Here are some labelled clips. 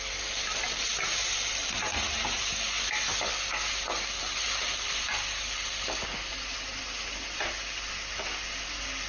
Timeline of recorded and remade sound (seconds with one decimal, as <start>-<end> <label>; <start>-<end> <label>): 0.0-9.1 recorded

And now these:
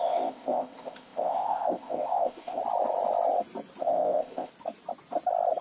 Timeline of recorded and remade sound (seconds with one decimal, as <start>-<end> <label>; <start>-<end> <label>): 0.0-2.6 remade; 2.6-3.8 recorded; 3.8-4.5 remade; 4.5-5.6 recorded

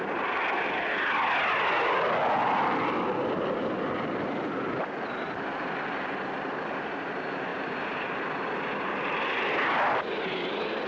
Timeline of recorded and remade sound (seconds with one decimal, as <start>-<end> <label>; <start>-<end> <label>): 0.0-10.9 recorded

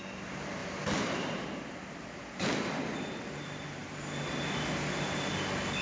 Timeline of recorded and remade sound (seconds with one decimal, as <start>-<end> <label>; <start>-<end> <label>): 0.0-0.6 recorded; 0.6-2.4 remade; 2.4-5.8 recorded